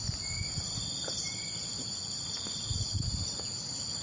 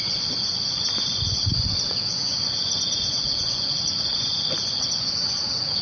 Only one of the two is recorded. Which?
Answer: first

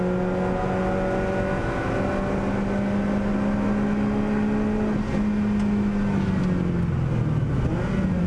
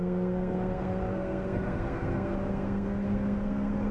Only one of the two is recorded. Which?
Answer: first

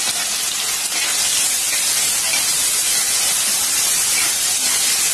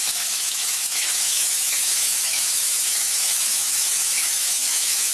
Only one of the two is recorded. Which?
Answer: first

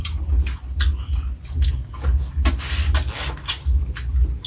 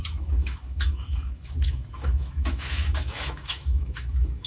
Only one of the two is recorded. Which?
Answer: first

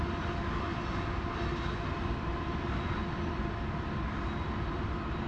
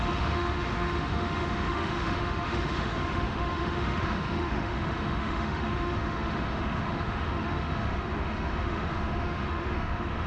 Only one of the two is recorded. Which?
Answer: first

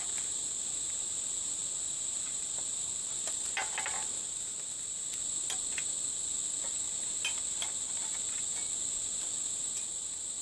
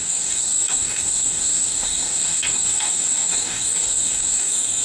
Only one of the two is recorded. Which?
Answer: first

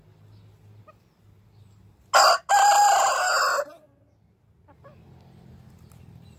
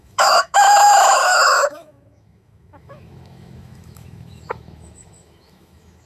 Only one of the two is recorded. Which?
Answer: first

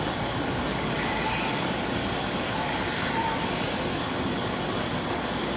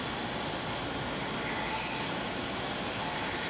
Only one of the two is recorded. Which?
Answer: second